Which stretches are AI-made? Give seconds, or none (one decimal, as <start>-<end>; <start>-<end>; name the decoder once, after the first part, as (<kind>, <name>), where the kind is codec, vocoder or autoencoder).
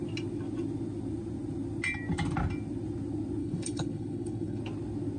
3.4-4.6 (codec, HILCodec)